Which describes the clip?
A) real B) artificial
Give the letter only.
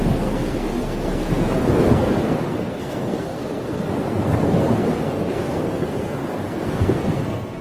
B